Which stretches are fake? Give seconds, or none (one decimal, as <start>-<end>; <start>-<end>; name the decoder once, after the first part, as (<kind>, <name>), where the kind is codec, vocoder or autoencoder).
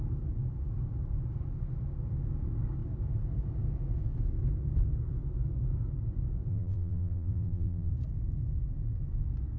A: 6.5-7.9 (vocoder, BigVGAN v2)